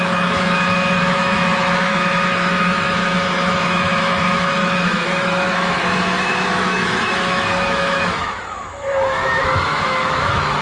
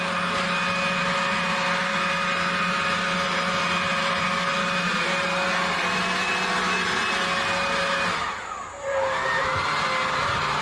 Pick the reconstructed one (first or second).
first